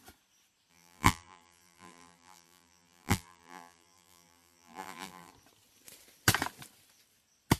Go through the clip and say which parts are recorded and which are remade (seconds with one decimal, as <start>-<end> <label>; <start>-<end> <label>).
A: 0.0-0.7 recorded; 0.7-5.3 remade; 5.3-7.6 recorded